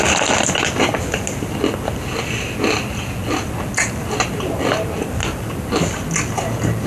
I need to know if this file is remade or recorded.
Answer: recorded